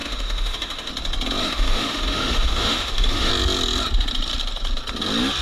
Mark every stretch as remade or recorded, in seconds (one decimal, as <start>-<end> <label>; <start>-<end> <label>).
0.0-0.9 remade; 0.9-1.4 recorded; 1.4-3.3 remade; 3.3-5.4 recorded